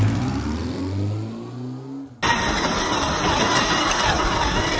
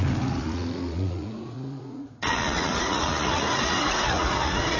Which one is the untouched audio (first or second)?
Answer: first